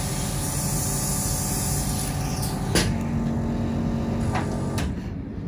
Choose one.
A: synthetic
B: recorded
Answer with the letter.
B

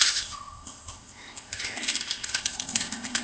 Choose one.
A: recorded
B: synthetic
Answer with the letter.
B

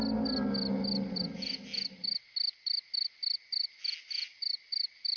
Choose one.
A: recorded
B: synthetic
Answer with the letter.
A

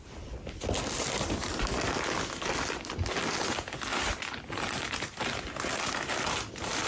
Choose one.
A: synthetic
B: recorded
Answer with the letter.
B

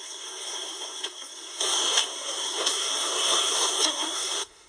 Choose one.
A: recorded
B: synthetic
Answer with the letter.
B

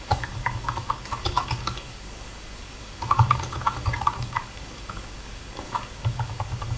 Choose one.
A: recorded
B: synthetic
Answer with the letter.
B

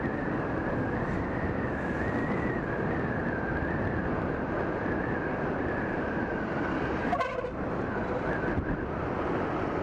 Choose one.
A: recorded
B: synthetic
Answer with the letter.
A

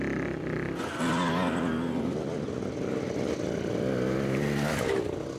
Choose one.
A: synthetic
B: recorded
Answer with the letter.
B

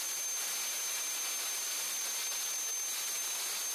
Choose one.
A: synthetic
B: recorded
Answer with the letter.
B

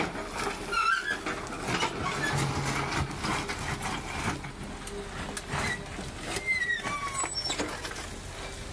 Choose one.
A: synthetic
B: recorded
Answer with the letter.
B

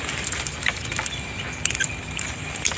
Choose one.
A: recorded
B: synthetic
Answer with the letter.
A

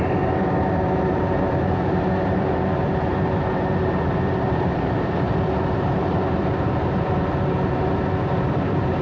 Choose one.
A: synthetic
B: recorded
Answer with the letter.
A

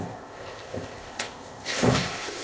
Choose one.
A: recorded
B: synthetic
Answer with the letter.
B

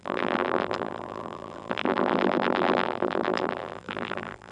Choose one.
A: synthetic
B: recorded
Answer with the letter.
A